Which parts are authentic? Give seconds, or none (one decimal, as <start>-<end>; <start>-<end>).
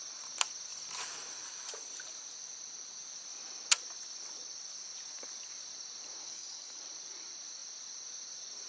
0.0-6.2; 6.8-8.7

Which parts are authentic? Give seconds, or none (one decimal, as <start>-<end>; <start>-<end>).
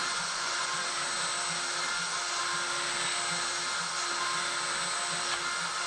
0.9-5.9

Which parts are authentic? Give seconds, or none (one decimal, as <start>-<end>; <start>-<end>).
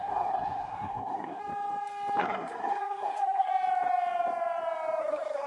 1.4-2.2; 3.5-5.0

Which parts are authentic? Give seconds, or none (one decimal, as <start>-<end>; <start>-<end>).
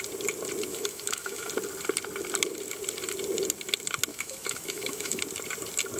0.0-0.7; 1.5-4.1; 5.2-6.0